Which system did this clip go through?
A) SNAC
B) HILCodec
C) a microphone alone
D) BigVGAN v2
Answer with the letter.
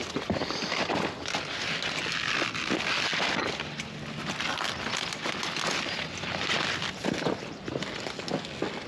C